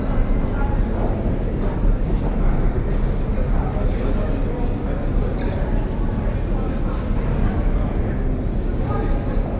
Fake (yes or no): no